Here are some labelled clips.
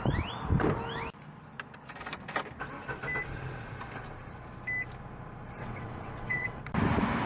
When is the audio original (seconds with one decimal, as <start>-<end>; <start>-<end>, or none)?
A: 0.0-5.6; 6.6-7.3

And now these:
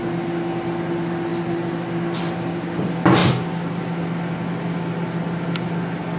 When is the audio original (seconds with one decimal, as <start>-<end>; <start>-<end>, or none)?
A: 0.0-6.2

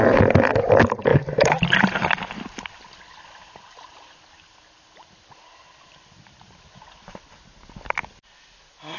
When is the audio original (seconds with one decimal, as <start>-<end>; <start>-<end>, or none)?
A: 0.0-9.0

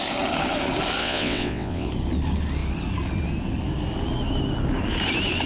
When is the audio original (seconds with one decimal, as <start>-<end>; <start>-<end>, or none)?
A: 0.0-1.0; 1.9-5.5

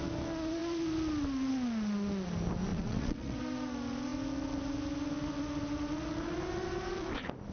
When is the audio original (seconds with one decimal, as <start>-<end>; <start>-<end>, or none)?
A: 0.0-2.7; 3.4-7.5

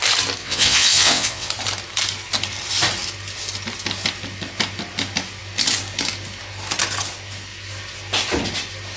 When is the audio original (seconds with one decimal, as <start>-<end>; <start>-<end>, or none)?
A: 0.0-0.4; 1.5-9.0

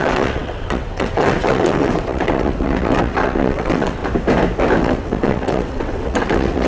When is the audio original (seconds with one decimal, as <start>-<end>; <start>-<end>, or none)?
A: 4.0-4.8